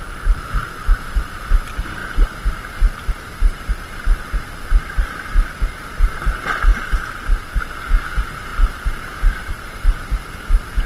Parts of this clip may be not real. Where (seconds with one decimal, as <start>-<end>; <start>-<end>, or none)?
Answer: none